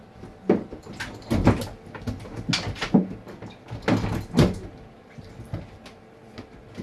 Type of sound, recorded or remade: recorded